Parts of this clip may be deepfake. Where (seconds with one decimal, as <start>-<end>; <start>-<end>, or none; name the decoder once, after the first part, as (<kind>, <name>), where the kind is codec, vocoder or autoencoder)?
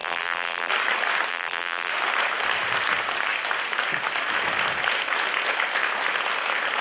0.0-0.7 (vocoder, BigVGAN v2); 1.3-1.9